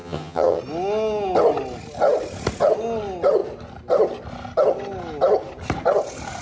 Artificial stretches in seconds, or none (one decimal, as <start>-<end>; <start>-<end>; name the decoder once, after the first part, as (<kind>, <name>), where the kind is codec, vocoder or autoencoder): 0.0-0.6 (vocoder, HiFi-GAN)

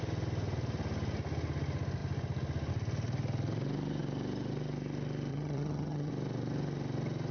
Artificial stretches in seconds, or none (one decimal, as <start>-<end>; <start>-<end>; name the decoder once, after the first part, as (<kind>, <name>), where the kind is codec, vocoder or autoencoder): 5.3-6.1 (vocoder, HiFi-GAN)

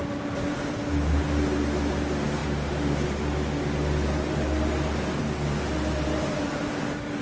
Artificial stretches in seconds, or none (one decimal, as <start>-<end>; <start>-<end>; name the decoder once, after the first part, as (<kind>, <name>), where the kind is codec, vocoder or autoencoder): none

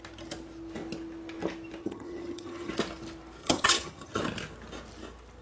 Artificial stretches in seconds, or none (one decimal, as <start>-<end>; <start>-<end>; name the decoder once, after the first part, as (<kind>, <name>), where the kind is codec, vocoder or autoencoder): 1.8-2.7 (vocoder, HiFi-GAN); 3.4-4.2

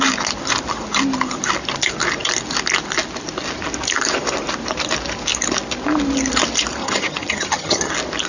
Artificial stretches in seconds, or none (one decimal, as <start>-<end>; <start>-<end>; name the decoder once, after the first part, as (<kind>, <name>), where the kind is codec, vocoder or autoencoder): 6.8-7.9 (vocoder, HiFi-GAN)